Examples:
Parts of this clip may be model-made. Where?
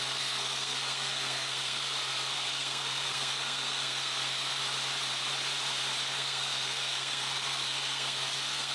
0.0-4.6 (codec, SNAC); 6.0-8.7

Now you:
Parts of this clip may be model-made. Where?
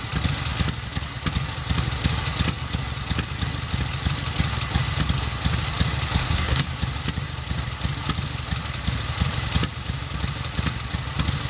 6.2-6.7 (codec, SNAC)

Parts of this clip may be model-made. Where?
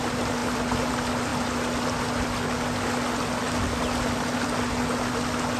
none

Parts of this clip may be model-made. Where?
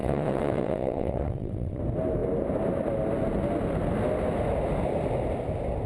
0.0-1.8 (vocoder, WaveNeXt)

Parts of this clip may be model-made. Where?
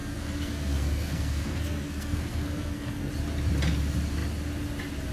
0.0-3.1 (codec, SNAC)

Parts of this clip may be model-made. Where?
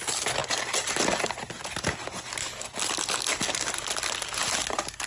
none